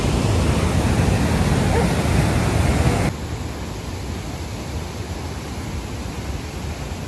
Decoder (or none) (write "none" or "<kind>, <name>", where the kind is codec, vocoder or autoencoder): none